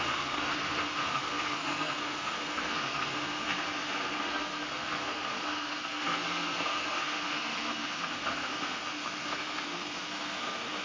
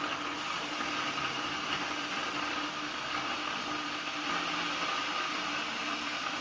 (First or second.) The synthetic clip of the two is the first